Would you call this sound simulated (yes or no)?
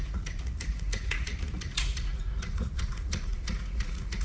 yes